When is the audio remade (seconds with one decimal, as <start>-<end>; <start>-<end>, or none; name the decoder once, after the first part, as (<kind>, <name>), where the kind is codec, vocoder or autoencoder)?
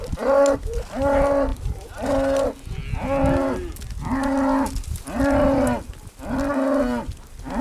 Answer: 1.5-2.1 (vocoder, BigVGAN v2)